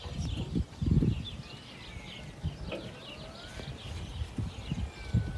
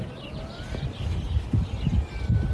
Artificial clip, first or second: second